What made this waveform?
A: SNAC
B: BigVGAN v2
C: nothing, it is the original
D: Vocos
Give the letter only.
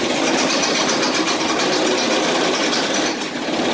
C